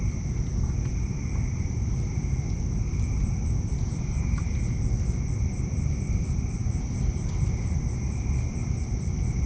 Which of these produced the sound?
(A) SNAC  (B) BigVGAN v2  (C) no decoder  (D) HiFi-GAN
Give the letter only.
C